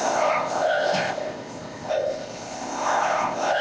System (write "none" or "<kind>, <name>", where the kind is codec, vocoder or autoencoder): codec, ZipCodec